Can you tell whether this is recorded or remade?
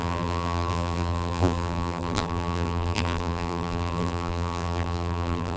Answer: remade